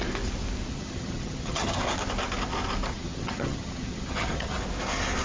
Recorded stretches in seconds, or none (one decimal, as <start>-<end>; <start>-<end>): 0.0-0.7; 1.8-2.9; 4.6-5.2